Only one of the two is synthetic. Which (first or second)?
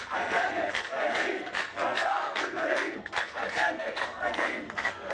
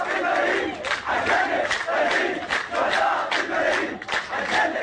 first